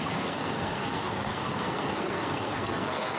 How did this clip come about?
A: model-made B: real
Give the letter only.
A